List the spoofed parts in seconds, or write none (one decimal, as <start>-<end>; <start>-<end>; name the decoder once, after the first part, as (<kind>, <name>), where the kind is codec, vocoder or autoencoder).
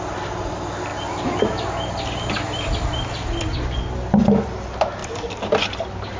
none